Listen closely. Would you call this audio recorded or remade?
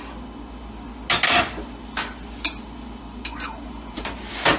recorded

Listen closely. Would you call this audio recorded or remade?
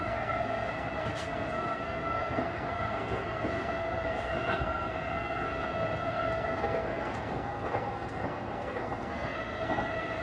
remade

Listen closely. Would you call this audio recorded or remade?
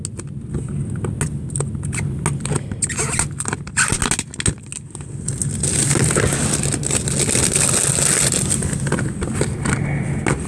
recorded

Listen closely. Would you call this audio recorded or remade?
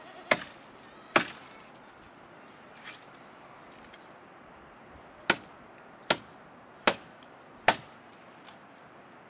recorded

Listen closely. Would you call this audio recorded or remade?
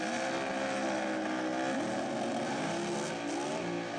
recorded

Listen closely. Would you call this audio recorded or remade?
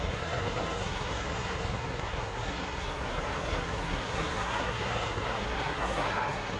remade